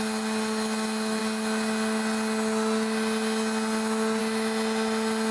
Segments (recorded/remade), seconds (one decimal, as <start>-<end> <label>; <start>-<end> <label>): 0.0-5.3 recorded